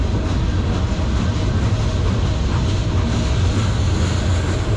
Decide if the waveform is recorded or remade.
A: recorded